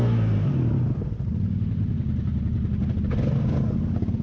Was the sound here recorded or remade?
recorded